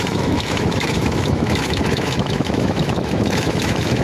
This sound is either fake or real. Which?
fake